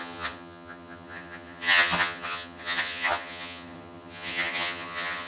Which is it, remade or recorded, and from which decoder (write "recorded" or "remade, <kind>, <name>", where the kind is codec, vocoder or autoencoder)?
remade, vocoder, HiFi-GAN